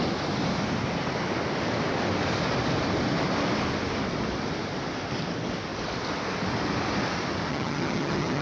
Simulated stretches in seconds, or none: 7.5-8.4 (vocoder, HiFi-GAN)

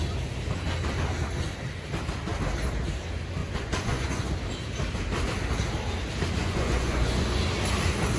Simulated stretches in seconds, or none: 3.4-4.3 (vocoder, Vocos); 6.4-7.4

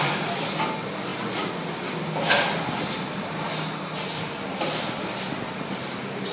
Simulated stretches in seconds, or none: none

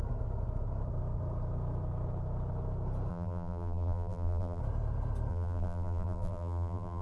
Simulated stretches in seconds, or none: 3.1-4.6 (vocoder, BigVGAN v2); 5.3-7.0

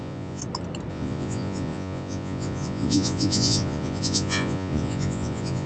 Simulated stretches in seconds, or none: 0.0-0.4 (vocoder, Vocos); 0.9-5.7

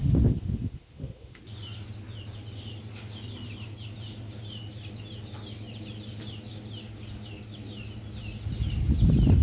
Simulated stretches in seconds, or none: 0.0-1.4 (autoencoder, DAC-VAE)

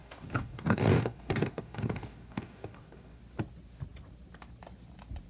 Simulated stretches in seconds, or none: 0.0-3.2 (codec, DAC)